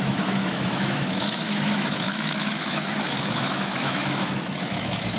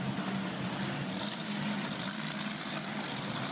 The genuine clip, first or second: second